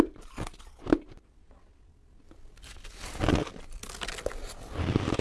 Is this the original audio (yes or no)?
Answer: yes